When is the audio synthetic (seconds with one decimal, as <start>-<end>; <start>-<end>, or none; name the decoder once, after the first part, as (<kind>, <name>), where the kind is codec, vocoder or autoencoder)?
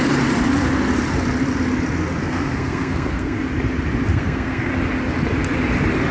2.2-3.4 (codec, SNAC); 4.1-4.7